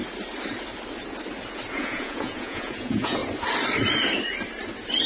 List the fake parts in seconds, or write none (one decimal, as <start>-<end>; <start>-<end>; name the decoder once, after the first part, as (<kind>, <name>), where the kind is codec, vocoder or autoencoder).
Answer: 1.7-3.2 (vocoder, Vocos)